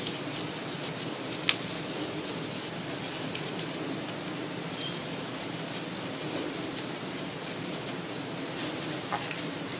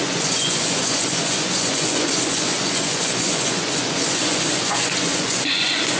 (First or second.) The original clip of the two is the first